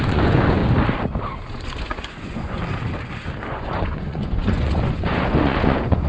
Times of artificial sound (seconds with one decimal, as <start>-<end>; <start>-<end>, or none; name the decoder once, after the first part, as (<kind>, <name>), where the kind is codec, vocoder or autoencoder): 0.0-0.6 (vocoder, Vocos); 1.5-2.6; 3.5-6.1